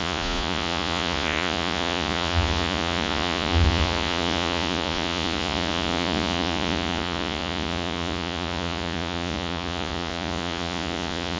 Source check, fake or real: fake